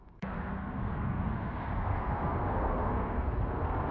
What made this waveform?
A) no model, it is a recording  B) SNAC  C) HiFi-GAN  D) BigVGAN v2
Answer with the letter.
B